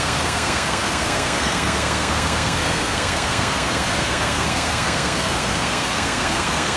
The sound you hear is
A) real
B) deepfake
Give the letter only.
B